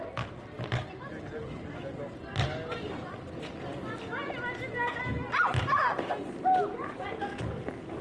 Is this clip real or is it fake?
real